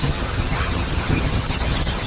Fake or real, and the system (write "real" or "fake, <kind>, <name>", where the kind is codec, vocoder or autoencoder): fake, vocoder, HiFi-GAN